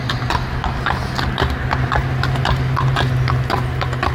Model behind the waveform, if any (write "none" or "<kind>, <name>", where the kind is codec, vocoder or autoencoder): none